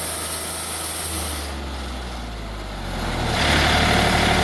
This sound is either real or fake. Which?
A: real